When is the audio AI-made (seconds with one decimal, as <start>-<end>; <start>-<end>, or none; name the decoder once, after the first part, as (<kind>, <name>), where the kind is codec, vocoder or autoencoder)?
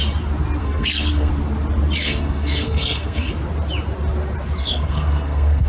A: 0.6-1.3 (codec, SNAC); 2.0-3.3; 4.6-5.7